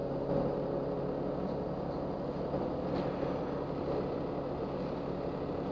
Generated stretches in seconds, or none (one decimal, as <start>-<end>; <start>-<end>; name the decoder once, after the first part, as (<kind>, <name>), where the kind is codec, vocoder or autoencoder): none